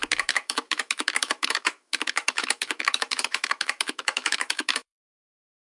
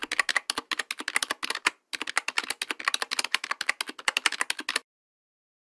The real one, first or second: second